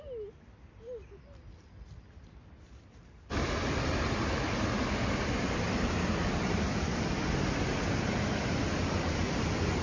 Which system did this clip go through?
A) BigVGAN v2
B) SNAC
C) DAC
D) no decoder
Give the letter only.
D